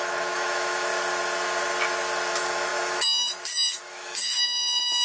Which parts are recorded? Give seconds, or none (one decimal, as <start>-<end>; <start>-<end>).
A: 0.9-2.3